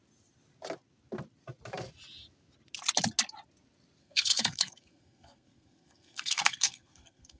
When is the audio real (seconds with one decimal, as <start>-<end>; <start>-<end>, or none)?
0.0-4.0